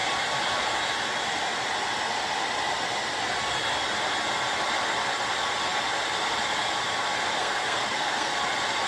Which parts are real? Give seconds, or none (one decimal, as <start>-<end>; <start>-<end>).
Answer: 0.0-7.4; 8.3-8.9